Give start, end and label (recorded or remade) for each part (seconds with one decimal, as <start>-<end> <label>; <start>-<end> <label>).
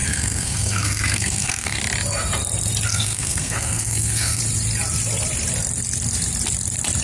0.0-1.8 remade; 1.8-2.9 recorded; 2.9-4.4 remade; 4.4-7.0 recorded